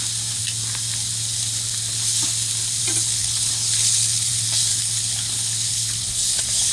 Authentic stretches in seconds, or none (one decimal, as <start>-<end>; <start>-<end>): 0.0-3.2; 4.3-4.7